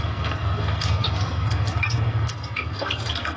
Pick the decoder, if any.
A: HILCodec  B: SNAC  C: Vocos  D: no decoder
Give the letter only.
B